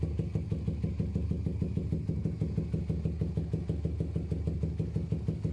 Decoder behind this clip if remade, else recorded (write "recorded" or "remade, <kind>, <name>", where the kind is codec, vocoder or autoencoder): recorded